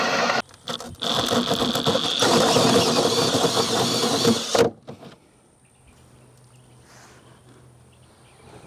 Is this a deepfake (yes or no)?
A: no